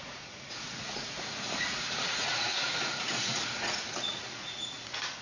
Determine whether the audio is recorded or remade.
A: remade